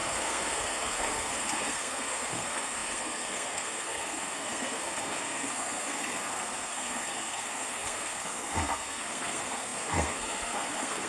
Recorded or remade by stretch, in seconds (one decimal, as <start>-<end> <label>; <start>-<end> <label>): 0.0-11.1 remade